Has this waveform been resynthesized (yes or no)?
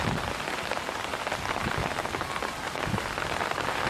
yes